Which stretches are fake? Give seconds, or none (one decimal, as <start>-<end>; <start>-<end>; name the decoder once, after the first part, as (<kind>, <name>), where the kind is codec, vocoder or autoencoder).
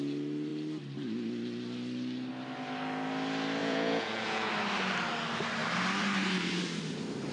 3.6-4.5 (vocoder, Vocos)